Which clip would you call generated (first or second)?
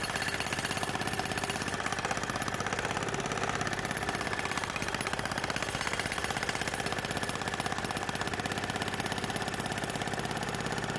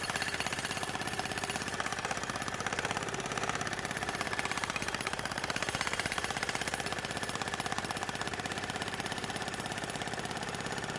second